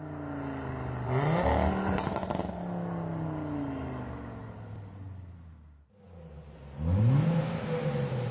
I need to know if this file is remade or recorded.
recorded